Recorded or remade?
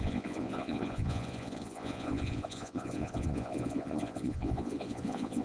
remade